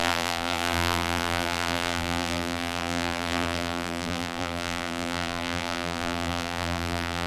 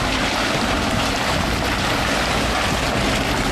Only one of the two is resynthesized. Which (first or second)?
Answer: first